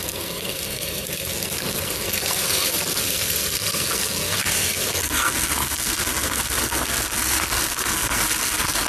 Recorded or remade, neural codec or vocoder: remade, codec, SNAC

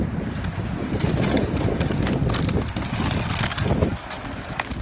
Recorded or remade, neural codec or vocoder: recorded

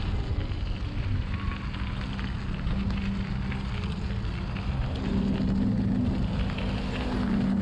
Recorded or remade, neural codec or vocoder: recorded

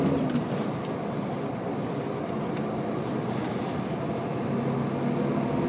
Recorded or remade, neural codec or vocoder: recorded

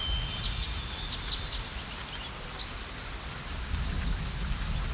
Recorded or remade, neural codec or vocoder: recorded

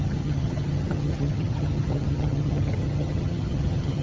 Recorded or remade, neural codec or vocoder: remade, vocoder, HiFi-GAN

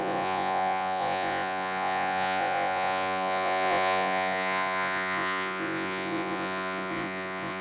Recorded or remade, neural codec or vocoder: remade, vocoder, Vocos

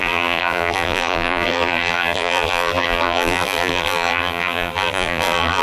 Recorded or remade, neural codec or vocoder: remade, vocoder, BigVGAN v2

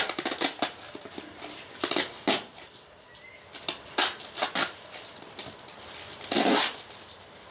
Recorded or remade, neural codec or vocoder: recorded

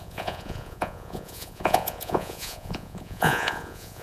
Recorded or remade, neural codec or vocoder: remade, vocoder, Vocos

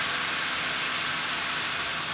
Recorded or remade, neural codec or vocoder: recorded